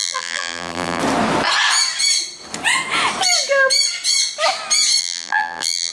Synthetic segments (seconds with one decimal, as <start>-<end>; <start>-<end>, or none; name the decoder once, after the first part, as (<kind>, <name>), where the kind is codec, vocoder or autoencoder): 0.0-1.0 (vocoder, BigVGAN v2); 5.0-5.9